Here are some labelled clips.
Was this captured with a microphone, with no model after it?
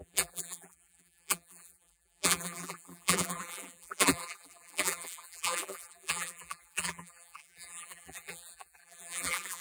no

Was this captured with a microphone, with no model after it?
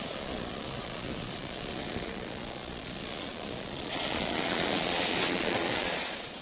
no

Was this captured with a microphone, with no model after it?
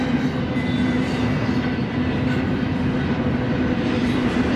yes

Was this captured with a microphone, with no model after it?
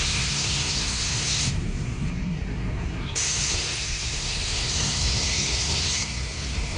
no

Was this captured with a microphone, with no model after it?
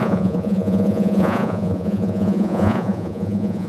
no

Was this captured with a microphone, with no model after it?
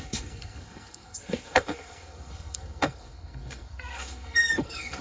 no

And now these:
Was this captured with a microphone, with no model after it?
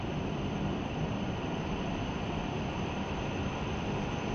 no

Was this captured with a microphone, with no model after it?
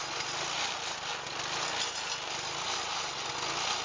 yes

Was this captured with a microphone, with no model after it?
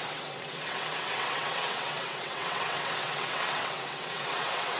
no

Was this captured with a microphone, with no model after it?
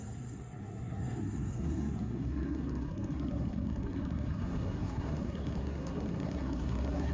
no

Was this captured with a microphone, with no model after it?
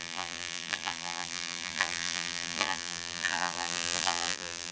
no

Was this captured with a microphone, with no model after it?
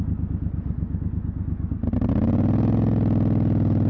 yes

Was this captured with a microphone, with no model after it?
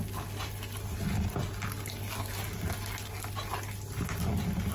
yes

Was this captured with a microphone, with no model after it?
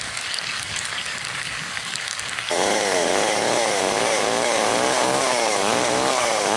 no